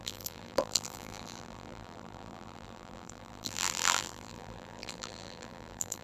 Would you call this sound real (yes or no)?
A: no